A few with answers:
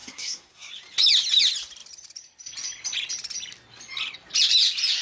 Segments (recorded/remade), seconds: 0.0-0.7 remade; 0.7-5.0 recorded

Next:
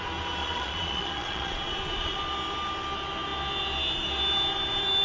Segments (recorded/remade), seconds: 0.0-0.4 recorded; 0.4-2.2 remade; 2.2-5.0 recorded

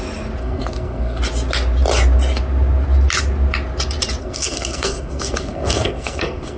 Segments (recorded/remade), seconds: 0.0-0.4 recorded; 0.4-1.2 remade; 1.2-4.2 recorded; 4.2-6.6 remade

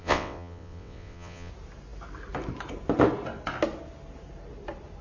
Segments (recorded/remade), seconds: 0.0-1.5 remade; 1.5-5.0 recorded

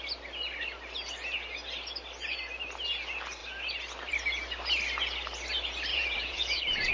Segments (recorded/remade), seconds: 0.0-5.9 recorded; 5.9-6.9 remade

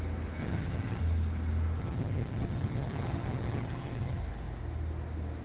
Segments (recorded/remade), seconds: 0.0-0.4 recorded; 0.4-1.0 remade; 1.0-1.8 recorded; 1.8-4.2 remade; 4.2-5.4 recorded

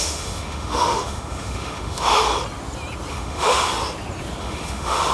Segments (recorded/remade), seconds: 0.0-2.3 remade; 2.3-3.1 recorded; 3.1-3.7 remade; 3.7-4.4 recorded; 4.4-5.1 remade